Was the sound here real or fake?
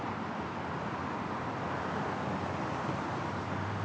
real